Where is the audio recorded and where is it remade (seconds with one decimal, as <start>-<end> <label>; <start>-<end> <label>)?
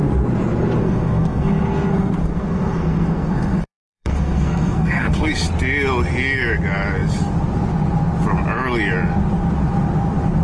0.0-0.8 recorded; 0.8-5.3 remade; 5.3-10.4 recorded